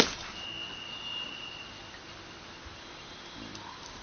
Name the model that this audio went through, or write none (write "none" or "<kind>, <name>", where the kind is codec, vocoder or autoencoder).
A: none